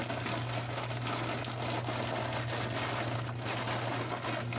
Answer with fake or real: real